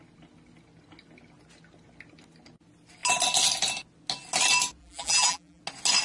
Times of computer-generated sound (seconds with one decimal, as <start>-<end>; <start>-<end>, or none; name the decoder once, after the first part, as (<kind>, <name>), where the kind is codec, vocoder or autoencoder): 4.8-5.6 (vocoder, BigVGAN v2)